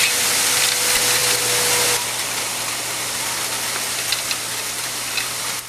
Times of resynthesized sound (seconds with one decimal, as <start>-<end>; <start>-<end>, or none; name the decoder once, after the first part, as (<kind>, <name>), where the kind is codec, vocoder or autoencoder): none